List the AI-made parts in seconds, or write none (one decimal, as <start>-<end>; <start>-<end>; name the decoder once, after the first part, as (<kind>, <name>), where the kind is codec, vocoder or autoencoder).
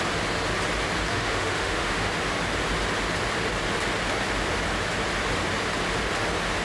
1.1-2.1 (autoencoder, DAC-VAE)